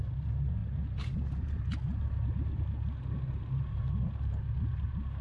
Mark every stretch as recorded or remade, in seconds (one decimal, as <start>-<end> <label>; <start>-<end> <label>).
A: 0.0-5.2 recorded